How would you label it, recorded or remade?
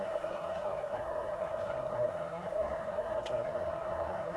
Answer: remade